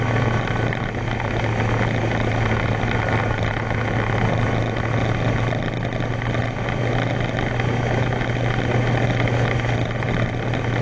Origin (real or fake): real